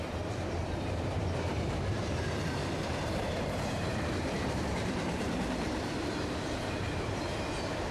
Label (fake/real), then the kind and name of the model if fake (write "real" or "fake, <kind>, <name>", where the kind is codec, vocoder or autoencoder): fake, vocoder, BigVGAN v2